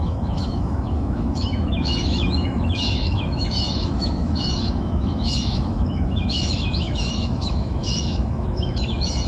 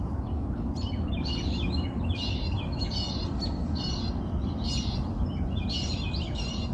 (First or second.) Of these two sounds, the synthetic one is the first